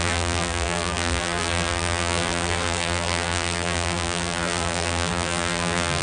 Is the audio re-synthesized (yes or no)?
yes